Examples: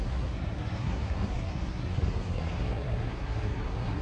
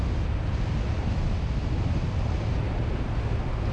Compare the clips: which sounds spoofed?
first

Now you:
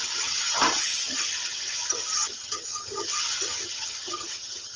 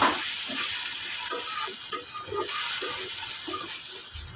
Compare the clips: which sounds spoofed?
first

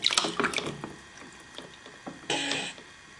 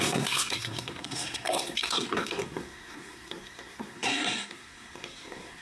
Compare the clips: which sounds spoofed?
second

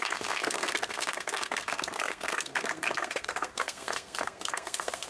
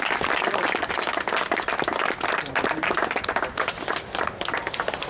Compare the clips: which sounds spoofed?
first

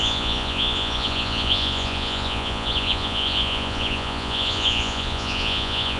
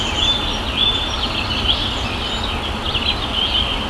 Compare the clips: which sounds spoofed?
first